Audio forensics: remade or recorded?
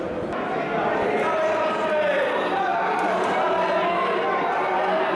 recorded